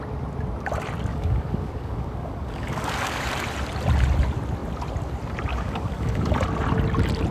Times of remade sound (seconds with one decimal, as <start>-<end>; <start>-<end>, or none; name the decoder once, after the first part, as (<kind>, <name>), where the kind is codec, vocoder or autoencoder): 1.1-3.3 (codec, DAC); 5.5-6.3